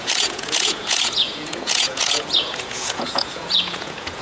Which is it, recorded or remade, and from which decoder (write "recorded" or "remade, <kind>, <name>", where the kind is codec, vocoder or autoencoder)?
remade, vocoder, Vocos